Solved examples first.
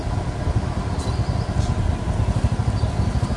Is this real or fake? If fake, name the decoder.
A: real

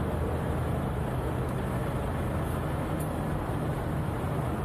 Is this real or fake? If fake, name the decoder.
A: real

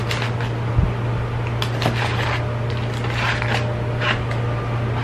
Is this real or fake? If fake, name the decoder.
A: real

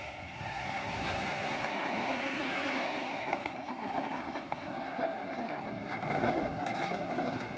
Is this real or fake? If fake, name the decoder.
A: fake, codec, SNAC